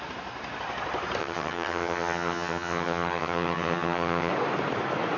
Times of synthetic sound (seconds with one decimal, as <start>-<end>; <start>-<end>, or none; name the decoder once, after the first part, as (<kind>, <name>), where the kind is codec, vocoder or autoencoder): 1.2-4.3 (vocoder, HiFi-GAN)